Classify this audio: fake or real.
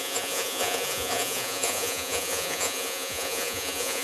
fake